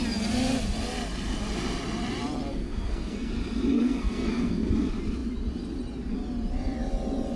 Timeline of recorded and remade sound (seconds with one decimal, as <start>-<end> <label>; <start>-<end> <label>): 0.0-2.5 recorded; 2.5-3.3 remade; 3.3-3.7 recorded; 3.7-4.7 remade; 4.7-7.4 recorded